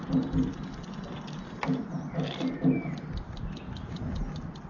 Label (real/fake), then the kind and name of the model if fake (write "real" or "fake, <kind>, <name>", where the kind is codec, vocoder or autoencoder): real